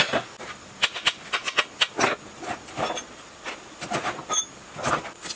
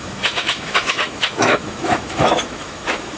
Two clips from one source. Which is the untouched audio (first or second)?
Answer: first